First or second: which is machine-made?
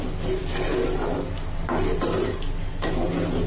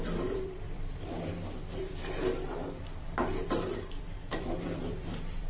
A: second